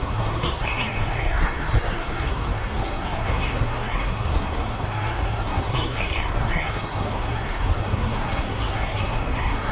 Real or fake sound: fake